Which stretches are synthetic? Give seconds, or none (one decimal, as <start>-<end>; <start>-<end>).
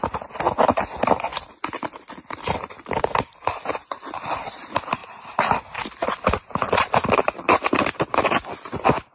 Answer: 0.0-9.1